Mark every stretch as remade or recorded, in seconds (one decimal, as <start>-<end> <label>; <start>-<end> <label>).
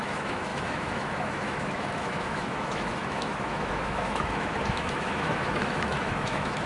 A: 0.0-6.7 remade